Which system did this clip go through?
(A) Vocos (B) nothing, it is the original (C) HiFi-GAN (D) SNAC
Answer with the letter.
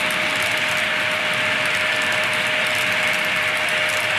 B